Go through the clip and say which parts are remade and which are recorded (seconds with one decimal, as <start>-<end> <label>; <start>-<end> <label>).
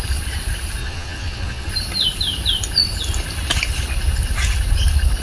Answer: 0.0-0.8 recorded; 0.8-1.7 remade; 1.7-5.2 recorded